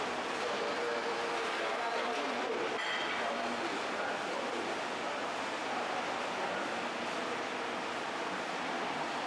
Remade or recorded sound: recorded